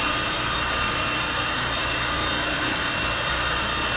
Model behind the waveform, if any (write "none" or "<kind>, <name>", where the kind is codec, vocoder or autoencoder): vocoder, BigVGAN v2